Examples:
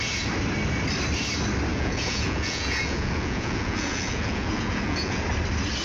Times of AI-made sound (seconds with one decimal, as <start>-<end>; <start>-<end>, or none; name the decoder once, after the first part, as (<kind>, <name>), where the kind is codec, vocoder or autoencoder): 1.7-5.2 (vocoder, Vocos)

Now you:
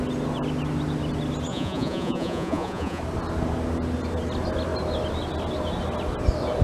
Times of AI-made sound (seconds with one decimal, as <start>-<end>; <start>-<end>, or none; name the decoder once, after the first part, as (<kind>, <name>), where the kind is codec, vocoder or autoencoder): 1.5-3.0 (vocoder, Vocos)

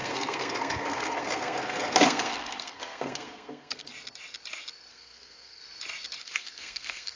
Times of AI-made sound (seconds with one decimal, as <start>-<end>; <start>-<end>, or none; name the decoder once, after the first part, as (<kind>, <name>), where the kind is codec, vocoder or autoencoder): 0.0-3.9 (codec, SNAC); 4.9-5.6; 6.2-7.2

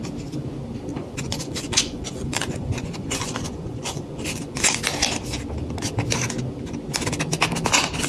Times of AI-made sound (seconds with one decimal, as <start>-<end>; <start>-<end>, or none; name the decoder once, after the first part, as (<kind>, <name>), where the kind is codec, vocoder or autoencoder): 0.9-4.8 (vocoder, Vocos)